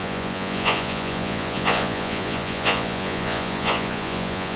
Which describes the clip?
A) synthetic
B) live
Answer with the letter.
A